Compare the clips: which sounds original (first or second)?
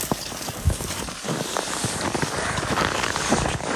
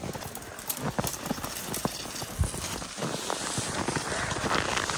second